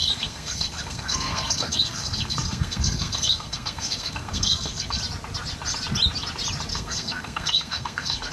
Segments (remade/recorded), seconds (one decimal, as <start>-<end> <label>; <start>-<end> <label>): 0.0-5.0 remade; 5.0-6.7 recorded; 6.7-8.3 remade